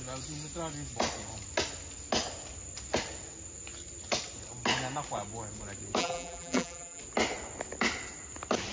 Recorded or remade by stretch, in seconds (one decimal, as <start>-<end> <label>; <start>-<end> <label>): 0.0-6.0 recorded; 6.0-7.0 remade; 7.0-8.7 recorded